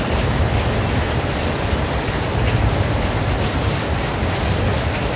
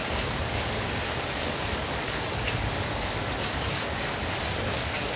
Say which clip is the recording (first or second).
first